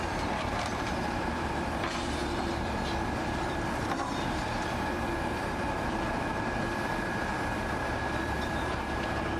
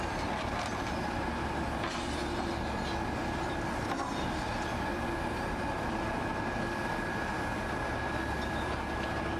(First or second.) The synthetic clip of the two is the first